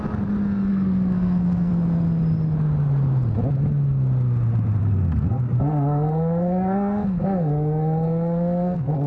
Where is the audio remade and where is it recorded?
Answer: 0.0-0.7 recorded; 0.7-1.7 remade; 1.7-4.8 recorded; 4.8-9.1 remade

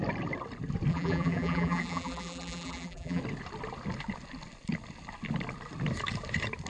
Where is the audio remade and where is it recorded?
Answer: 0.0-0.9 recorded; 0.9-3.2 remade; 3.2-6.7 recorded

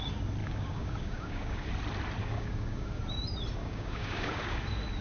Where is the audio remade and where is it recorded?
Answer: 0.0-0.4 recorded; 0.4-1.7 remade; 1.7-2.2 recorded; 2.2-3.0 remade; 3.0-3.6 recorded; 3.6-4.6 remade; 4.6-5.0 recorded

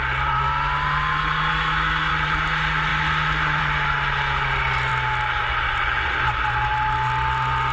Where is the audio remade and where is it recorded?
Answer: 0.0-1.5 recorded; 1.5-2.1 remade; 2.1-7.7 recorded

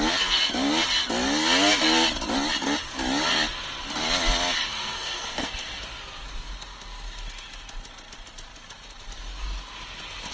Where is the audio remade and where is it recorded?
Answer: 0.0-4.6 recorded; 4.6-5.8 remade; 5.8-10.3 recorded

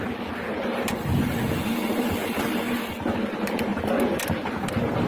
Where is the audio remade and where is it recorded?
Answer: 0.0-5.1 recorded

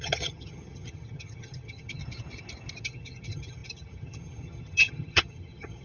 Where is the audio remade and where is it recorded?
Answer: 0.0-2.0 remade; 2.0-2.8 recorded; 2.8-5.8 remade

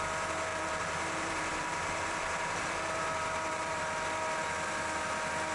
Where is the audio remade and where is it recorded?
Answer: 0.0-0.5 recorded; 0.5-3.8 remade; 3.8-5.5 recorded